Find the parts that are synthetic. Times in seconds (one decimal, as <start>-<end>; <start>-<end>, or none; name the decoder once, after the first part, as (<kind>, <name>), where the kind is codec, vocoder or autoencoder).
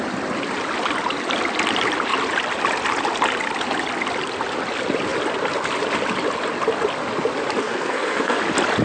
7.6-8.4 (codec, SNAC)